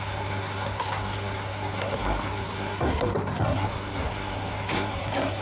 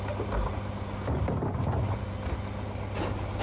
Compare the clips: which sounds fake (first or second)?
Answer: first